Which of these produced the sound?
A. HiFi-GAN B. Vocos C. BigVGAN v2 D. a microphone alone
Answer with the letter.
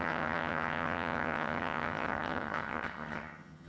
A